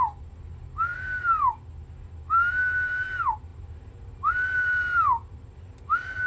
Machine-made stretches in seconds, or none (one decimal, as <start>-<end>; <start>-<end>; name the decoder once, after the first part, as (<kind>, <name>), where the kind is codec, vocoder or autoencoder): none